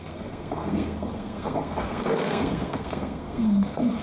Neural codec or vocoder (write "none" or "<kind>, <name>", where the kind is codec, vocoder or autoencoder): codec, SNAC